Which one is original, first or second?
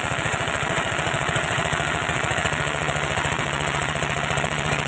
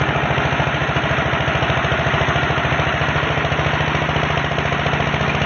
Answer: second